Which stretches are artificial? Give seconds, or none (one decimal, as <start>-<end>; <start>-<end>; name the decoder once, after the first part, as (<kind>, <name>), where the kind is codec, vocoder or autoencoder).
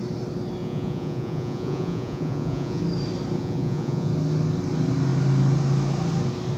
0.6-2.8 (vocoder, Vocos); 3.4-4.1